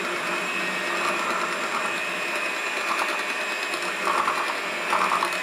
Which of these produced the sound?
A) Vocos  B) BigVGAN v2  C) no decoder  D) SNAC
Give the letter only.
C